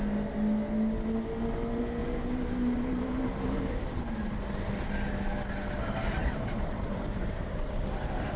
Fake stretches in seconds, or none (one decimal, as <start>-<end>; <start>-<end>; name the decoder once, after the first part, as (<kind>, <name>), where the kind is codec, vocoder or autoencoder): 2.0-4.0 (vocoder, BigVGAN v2); 6.2-8.4